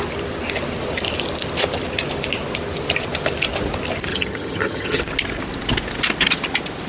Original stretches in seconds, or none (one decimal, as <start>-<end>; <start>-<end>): 0.0-4.1; 5.0-6.9